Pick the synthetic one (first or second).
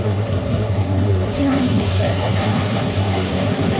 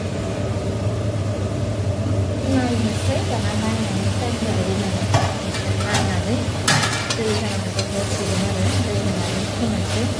first